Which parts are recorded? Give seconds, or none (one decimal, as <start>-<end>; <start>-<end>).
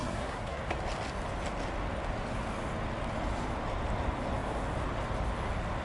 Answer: 0.6-5.8